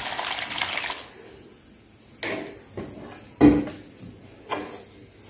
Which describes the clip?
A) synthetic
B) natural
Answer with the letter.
B